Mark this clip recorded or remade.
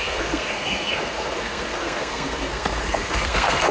remade